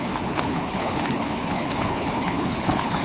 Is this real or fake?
fake